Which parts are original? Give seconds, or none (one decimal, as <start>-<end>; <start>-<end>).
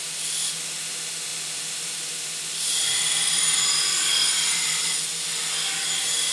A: 0.0-1.3; 5.1-6.3